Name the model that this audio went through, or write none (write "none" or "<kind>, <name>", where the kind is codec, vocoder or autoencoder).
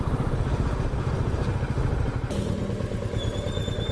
none